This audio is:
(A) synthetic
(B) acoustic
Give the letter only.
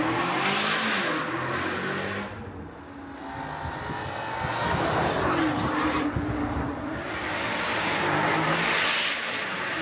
B